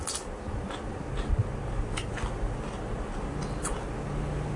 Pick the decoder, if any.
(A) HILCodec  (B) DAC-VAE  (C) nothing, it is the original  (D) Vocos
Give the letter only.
C